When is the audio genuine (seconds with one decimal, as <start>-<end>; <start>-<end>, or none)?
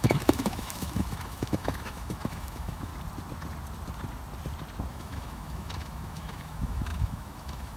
2.9-4.9